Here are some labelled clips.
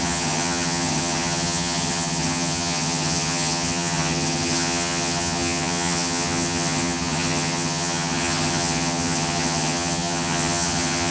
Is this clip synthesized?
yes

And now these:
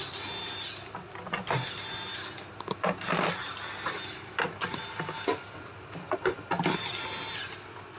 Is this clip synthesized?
no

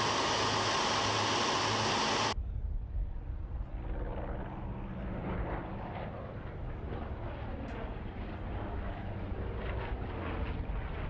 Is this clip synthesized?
no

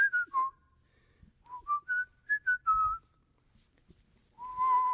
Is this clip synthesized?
no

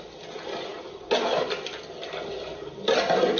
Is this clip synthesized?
no